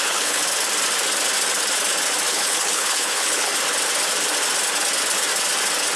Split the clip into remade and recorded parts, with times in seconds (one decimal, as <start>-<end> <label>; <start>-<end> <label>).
0.0-0.4 remade; 0.4-2.3 recorded; 2.3-3.5 remade; 3.5-6.0 recorded